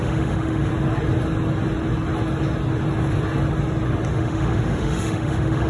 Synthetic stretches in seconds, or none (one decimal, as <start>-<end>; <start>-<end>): 0.0-0.7; 4.1-5.7